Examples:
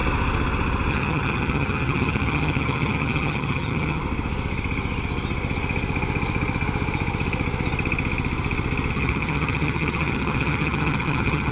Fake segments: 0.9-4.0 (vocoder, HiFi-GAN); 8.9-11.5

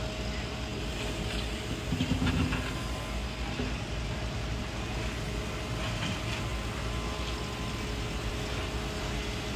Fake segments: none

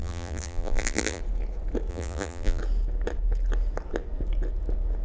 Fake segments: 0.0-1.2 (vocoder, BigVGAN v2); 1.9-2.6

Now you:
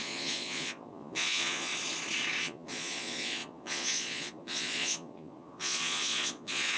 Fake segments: 0.0-1.7 (vocoder, Vocos); 2.4-6.8

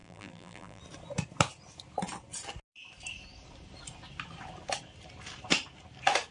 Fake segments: 0.0-0.8 (vocoder, BigVGAN v2)

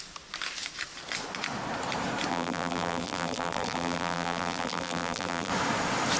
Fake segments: 2.3-5.5 (vocoder, BigVGAN v2)

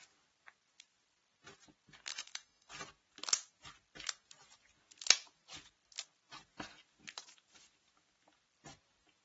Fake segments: 2.1-2.7 (autoencoder, DAC-VAE)

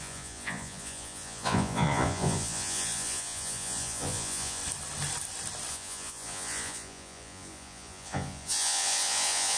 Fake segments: 0.0-4.6 (vocoder, Vocos); 5.7-9.6